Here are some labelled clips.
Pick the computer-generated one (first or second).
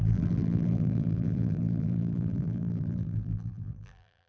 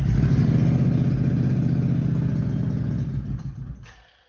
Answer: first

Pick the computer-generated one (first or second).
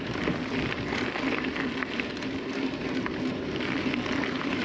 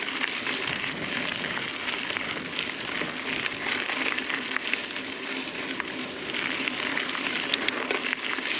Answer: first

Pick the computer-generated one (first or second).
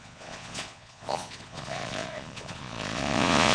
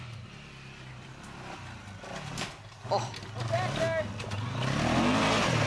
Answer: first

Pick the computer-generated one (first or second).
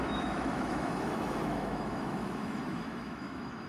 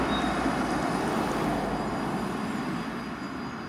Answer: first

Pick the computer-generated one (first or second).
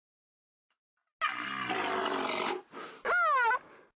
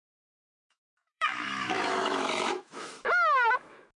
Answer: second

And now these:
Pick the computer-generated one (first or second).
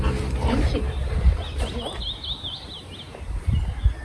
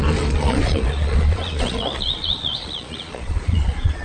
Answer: second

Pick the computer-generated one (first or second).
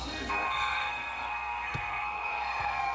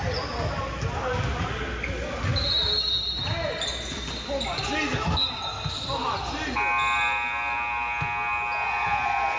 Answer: first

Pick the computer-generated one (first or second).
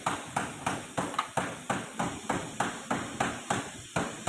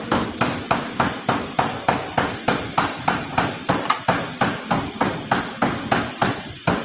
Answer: second